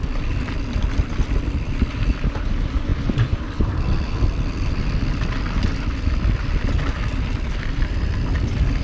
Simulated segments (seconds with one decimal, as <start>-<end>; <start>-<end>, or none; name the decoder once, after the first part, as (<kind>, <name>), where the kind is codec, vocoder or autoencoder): none